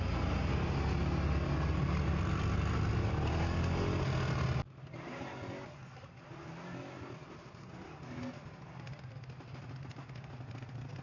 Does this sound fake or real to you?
real